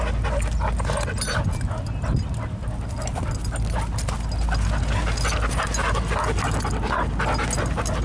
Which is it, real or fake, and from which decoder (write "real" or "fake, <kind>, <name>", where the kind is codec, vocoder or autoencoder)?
real